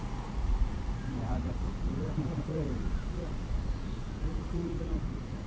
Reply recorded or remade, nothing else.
remade